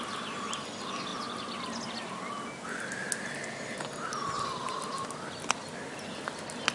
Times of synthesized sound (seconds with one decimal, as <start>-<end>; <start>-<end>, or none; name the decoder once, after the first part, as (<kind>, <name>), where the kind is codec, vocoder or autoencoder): 0.0-1.1 (vocoder, BigVGAN v2); 5.1-6.7